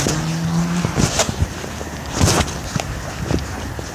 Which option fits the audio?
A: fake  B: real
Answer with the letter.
B